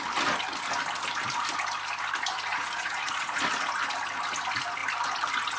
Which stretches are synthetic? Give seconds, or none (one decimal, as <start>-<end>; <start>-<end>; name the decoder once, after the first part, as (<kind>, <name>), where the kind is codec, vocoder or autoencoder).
2.5-3.4 (vocoder, Vocos)